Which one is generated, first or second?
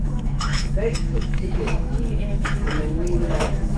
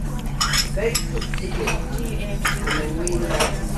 first